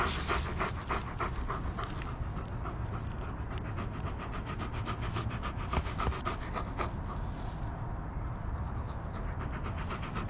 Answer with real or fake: real